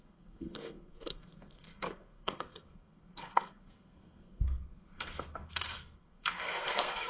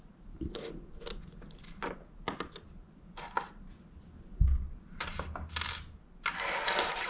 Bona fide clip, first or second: second